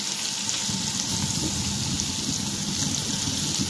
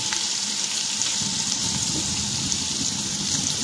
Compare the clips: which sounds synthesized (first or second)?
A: second